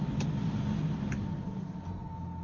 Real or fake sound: real